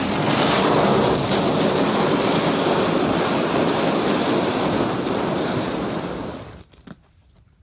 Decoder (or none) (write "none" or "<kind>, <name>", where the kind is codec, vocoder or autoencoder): none